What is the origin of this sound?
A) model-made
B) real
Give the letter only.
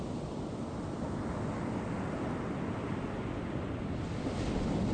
B